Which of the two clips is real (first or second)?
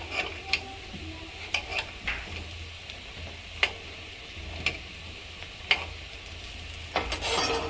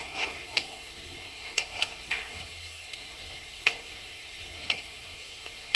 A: first